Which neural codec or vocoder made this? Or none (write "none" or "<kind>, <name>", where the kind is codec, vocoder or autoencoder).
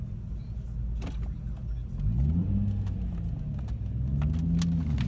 none